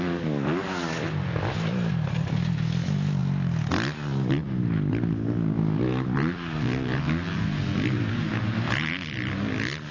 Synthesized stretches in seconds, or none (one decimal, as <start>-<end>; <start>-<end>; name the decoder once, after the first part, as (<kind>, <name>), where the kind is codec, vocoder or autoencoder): none